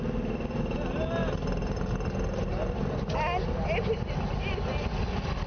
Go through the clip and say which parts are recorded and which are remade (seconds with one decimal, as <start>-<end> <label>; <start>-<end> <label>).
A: 0.0-5.5 recorded

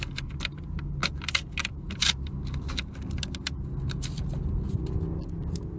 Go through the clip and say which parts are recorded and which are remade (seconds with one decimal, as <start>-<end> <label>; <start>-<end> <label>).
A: 0.0-5.8 recorded

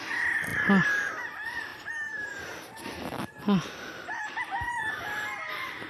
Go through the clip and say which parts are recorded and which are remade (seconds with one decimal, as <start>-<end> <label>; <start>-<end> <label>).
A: 0.0-1.7 recorded; 1.7-5.0 remade; 5.0-5.9 recorded

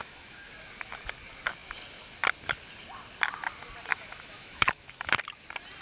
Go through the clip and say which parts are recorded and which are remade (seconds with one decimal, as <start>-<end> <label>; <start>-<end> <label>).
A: 0.0-0.5 remade; 0.5-3.9 recorded; 3.9-5.1 remade; 5.1-5.8 recorded